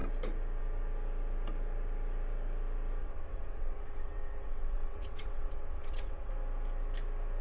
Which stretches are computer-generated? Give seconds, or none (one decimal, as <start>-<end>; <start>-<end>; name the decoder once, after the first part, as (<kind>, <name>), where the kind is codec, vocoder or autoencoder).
3.0-6.3 (vocoder, WaveNeXt)